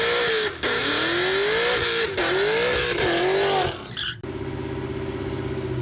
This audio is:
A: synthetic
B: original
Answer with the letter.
B